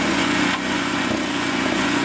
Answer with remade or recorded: remade